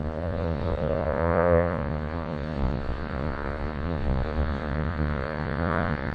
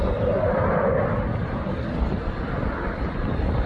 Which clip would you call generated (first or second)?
first